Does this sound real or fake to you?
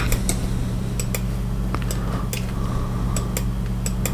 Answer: real